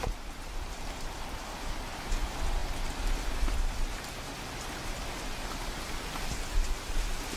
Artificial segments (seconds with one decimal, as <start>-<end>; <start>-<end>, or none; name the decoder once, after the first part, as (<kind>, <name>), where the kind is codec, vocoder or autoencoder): none